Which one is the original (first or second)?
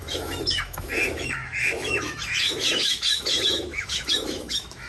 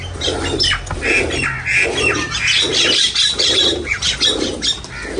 second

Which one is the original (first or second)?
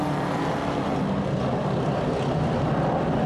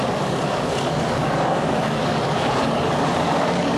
first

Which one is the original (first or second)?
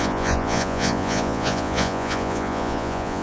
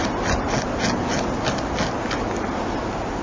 second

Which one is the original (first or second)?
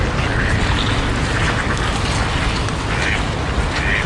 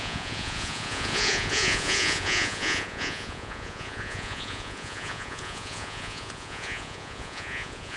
first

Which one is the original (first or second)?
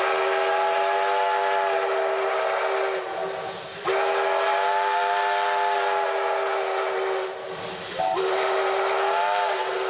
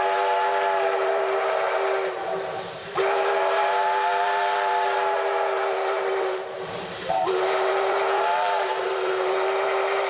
first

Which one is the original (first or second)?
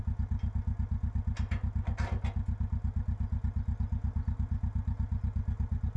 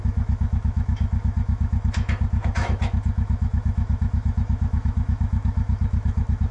first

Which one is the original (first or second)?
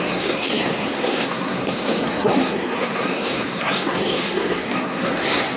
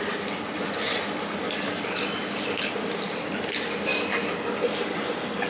second